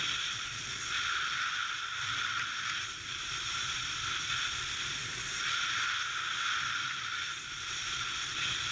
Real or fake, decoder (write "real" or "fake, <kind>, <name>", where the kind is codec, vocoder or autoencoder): fake, vocoder, BigVGAN v2